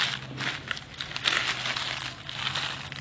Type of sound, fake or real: real